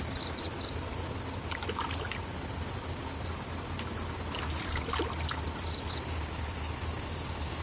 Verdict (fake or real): real